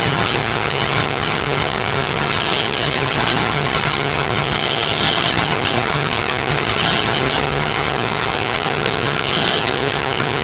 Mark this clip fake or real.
fake